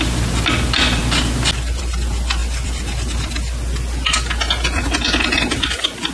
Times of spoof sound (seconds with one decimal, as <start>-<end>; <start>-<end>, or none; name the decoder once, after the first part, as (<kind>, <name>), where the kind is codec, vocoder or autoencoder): none